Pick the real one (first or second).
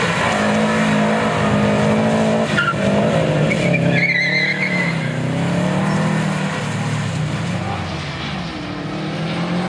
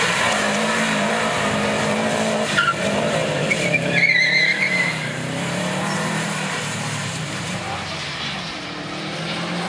first